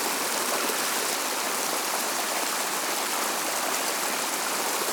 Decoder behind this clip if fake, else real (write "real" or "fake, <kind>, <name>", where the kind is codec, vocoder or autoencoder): real